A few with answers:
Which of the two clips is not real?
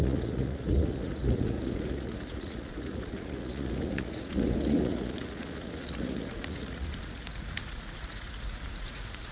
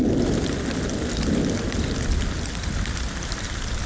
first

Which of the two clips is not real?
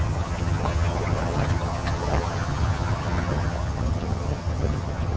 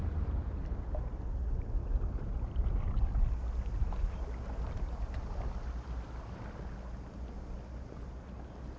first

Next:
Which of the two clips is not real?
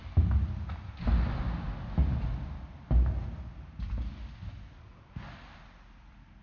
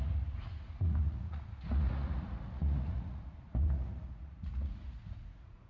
second